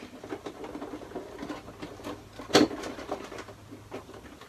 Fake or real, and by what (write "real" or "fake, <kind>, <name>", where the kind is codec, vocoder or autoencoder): real